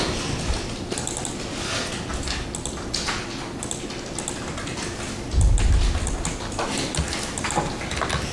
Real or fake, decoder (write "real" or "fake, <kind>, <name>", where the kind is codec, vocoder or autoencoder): real